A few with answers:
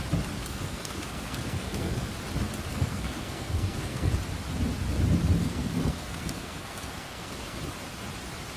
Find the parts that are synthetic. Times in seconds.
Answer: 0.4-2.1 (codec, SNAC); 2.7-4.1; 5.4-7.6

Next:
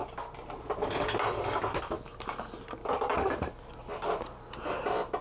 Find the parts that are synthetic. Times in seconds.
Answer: none

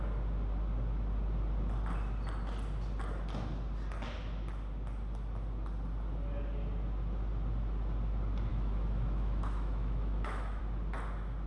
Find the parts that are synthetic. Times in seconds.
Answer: 8.5-10.6 (autoencoder, DAC-VAE)

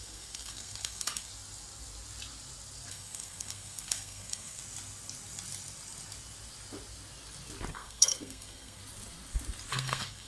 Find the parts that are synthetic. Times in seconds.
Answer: 0.0-1.3 (codec, SNAC); 2.9-4.6; 7.7-8.8; 9.7-10.3

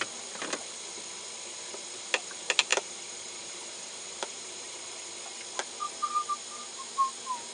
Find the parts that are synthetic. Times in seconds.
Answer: 2.7-5.1 (vocoder, BigVGAN v2)

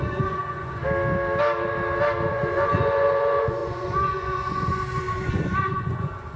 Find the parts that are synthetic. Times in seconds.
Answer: 0.0-0.8 (vocoder, Vocos); 2.3-6.4

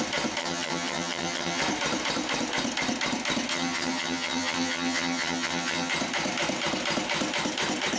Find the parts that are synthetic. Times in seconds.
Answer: 0.4-1.6 (vocoder, HiFi-GAN); 3.5-5.9